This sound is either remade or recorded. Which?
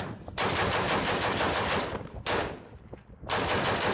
recorded